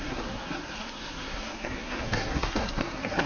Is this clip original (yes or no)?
no